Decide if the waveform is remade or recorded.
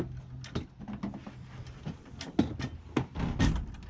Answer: recorded